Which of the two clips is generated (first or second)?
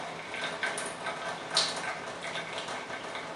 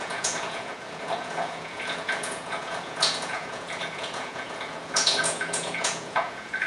second